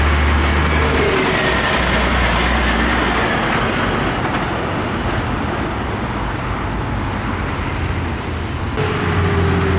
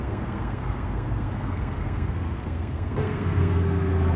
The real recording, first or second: first